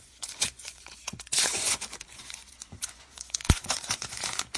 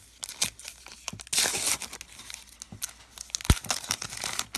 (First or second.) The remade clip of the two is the first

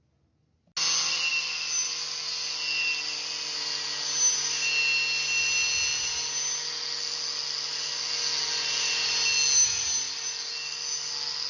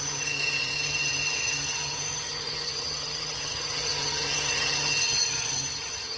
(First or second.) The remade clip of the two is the second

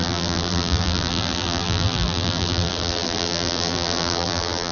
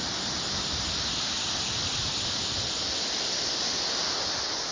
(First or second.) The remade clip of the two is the first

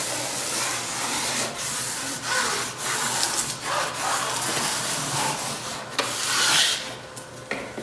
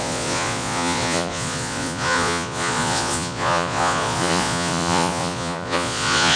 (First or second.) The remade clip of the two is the second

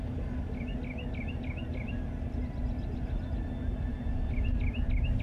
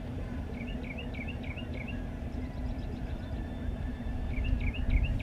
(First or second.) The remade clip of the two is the second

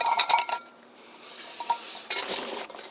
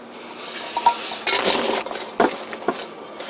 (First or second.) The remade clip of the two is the first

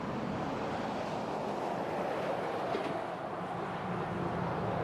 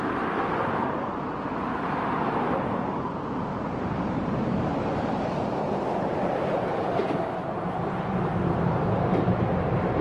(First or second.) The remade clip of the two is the second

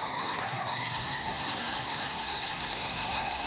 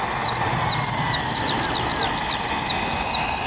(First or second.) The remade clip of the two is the first